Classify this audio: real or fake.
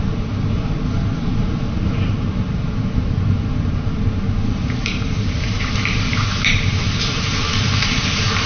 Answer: fake